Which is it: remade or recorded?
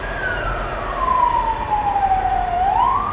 recorded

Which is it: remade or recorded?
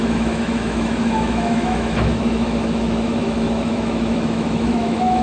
remade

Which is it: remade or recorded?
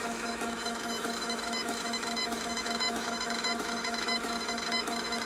remade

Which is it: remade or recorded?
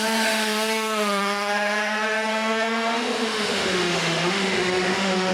remade